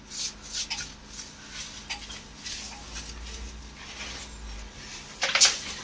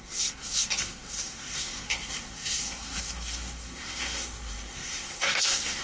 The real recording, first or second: first